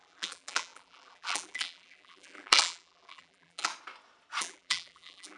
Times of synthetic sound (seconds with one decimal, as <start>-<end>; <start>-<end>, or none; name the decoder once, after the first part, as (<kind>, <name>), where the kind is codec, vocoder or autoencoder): 0.0-3.7 (vocoder, BigVGAN v2); 4.4-5.4